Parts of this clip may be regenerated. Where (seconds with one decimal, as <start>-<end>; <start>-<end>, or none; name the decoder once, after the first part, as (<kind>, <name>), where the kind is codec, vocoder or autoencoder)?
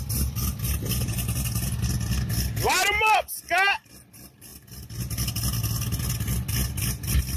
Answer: none